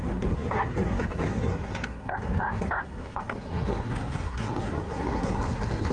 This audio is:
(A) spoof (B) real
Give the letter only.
A